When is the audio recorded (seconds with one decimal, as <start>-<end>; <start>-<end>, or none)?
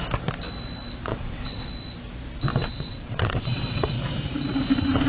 0.0-1.1; 1.7-2.5; 3.9-5.1